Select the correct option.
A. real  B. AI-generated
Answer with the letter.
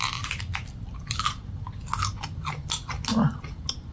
A